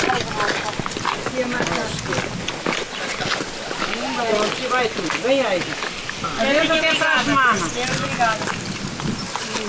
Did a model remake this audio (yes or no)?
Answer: no